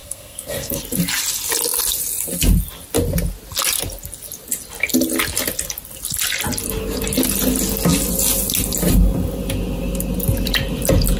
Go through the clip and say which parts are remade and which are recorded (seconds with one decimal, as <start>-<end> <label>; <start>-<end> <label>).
0.0-0.8 remade; 0.8-11.2 recorded